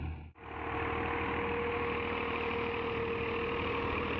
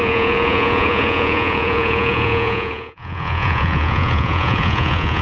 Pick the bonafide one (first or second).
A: first